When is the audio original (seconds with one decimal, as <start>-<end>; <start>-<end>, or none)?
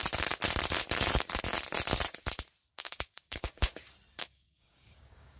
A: 0.0-2.7; 3.7-4.2